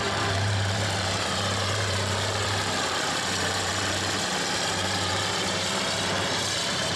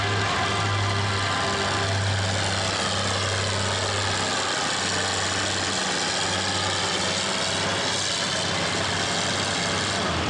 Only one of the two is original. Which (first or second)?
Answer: second